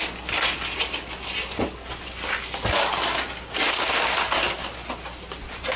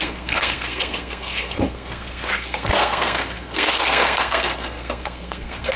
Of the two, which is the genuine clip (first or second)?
first